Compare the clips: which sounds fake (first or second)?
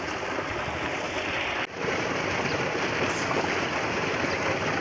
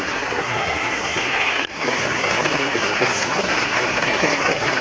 second